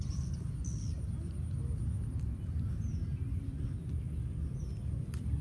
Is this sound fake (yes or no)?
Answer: no